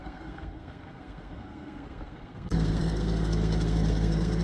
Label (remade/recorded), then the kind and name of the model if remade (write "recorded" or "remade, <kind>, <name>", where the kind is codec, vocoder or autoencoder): remade, codec, SNAC